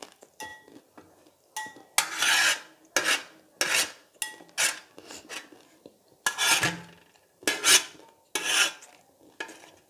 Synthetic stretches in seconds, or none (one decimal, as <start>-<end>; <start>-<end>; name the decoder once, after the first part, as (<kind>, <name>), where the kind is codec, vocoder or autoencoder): none